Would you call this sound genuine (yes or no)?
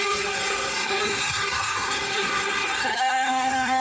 no